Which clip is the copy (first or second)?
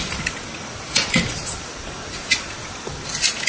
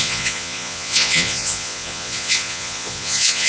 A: second